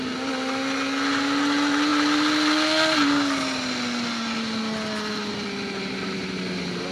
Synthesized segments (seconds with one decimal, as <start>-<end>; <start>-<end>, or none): none

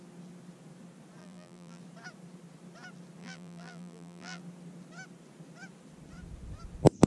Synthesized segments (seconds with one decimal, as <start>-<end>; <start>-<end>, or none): 1.2-1.8; 3.2-4.4

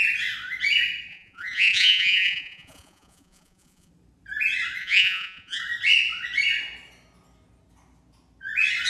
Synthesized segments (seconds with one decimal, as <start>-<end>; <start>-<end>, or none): 1.1-3.9; 4.8-5.6

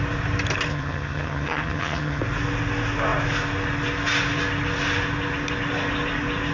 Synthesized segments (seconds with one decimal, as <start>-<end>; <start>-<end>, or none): 0.7-2.2

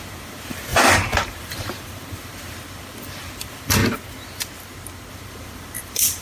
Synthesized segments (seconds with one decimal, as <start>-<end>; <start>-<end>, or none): 0.0-3.8; 5.1-6.2